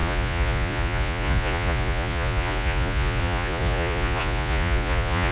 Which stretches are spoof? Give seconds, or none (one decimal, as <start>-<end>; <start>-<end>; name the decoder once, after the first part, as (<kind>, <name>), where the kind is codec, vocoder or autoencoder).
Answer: 0.0-5.3 (vocoder, Vocos)